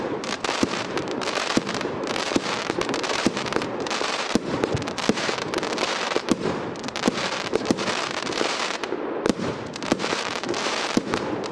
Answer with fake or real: fake